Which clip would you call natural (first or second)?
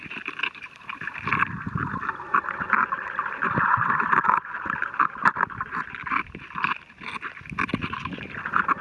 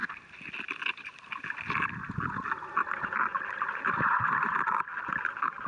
second